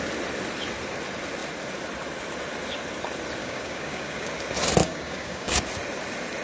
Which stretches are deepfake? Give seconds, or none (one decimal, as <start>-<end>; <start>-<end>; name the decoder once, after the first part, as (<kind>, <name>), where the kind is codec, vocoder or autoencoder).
3.4-4.3 (codec, DAC); 4.8-5.6